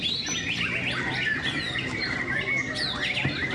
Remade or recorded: recorded